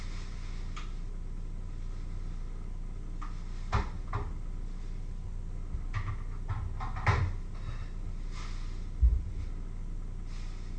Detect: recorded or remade recorded